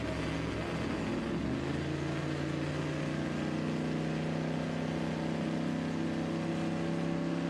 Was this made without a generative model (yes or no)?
yes